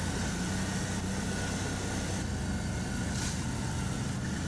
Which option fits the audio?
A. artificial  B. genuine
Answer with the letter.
B